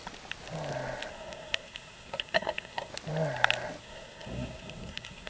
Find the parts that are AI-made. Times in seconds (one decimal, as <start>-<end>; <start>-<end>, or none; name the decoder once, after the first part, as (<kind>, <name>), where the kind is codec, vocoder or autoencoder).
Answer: 1.1-2.9 (codec, SNAC); 3.8-5.3